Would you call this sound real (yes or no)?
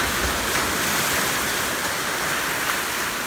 yes